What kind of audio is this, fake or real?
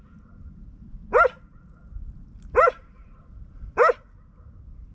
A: real